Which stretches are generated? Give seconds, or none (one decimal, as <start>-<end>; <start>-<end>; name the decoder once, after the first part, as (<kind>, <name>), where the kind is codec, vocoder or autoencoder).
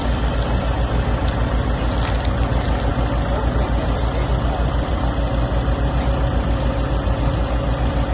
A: none